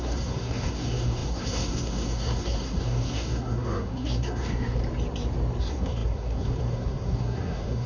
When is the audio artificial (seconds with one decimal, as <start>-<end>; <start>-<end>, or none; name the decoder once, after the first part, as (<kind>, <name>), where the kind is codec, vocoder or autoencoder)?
0.0-4.8 (codec, SNAC); 5.6-7.9